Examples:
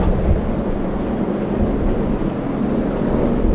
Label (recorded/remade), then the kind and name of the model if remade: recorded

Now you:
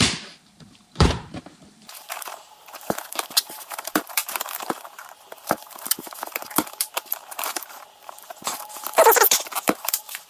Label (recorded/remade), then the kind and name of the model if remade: remade, vocoder, BigVGAN v2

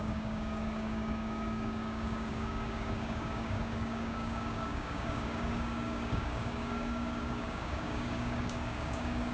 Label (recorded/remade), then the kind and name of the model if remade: remade, codec, DAC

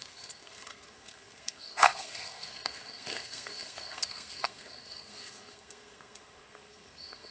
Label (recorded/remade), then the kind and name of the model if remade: remade, codec, SNAC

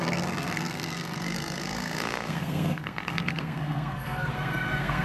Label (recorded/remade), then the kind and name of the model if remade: remade, codec, SNAC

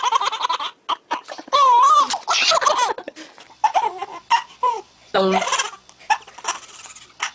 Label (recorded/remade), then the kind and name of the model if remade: recorded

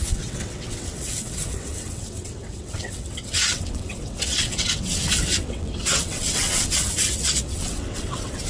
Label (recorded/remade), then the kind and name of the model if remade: remade, vocoder, WaveNeXt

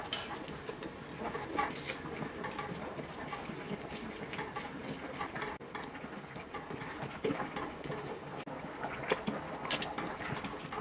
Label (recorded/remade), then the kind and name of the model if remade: recorded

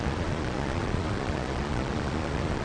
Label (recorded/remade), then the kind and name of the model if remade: remade, vocoder, Vocos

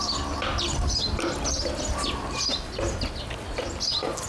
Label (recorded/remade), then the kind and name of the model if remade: recorded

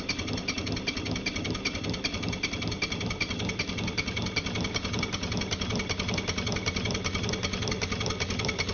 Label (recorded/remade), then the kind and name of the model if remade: recorded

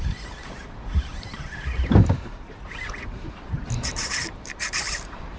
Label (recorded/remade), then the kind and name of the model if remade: remade, vocoder, BigVGAN v2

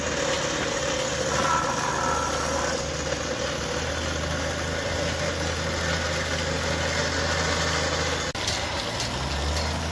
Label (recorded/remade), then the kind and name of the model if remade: recorded